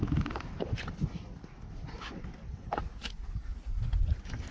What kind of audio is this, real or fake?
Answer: real